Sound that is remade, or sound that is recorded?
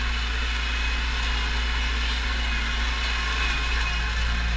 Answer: recorded